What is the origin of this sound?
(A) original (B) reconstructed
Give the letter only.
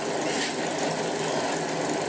A